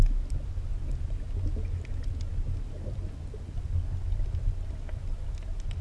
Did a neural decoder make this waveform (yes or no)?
no